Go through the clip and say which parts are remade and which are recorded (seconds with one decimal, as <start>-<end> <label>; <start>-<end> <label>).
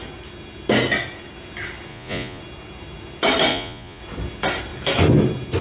0.0-1.9 recorded; 1.9-2.4 remade; 2.4-3.5 recorded; 3.5-4.0 remade; 4.0-5.6 recorded